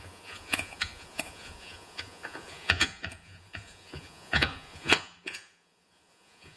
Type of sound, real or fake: fake